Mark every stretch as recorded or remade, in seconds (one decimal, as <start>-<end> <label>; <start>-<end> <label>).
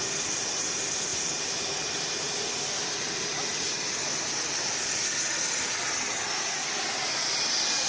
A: 0.0-7.9 recorded